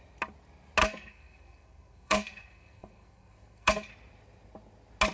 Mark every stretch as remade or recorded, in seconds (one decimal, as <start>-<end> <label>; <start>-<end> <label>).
0.0-0.8 recorded; 0.8-3.9 remade; 3.9-5.1 recorded